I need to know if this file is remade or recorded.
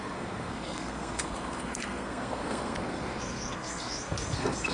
remade